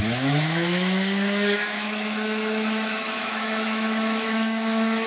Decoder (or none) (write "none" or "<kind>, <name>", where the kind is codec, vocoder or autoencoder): autoencoder, DAC-VAE